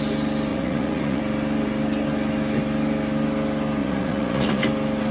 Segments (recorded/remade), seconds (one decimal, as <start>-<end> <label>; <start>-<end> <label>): 0.0-0.5 recorded; 0.5-1.2 remade; 1.2-3.8 recorded; 3.8-4.6 remade; 4.6-5.1 recorded